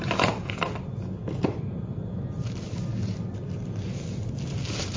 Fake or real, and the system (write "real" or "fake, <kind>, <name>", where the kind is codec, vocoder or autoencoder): real